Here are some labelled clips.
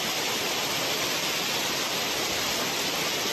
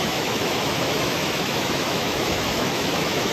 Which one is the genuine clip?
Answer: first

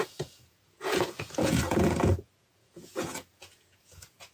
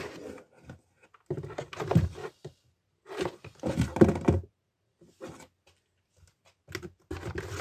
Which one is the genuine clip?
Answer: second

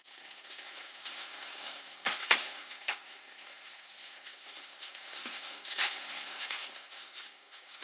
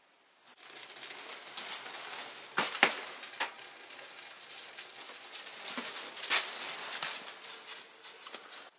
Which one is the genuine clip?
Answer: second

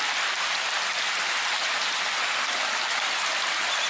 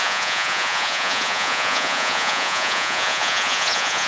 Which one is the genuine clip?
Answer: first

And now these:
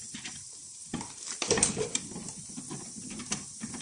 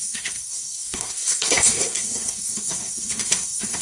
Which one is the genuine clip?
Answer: first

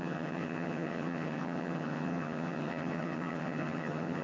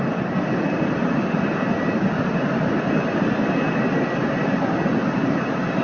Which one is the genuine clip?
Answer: second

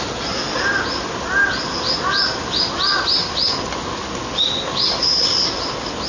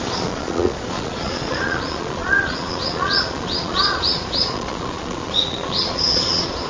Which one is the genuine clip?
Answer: first